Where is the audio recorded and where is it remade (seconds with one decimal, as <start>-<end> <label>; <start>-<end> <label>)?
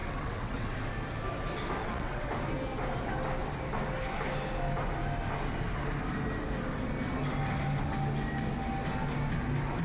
0.0-0.8 remade; 0.8-1.8 recorded; 1.8-2.3 remade; 2.3-9.8 recorded